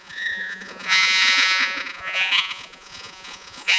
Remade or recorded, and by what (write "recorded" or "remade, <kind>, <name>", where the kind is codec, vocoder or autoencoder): remade, vocoder, Vocos